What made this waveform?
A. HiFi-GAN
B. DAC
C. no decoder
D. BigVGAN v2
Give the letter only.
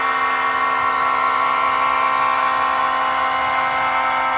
C